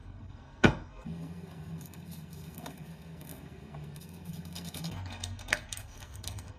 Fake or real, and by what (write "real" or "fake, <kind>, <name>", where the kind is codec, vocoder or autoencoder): fake, codec, SNAC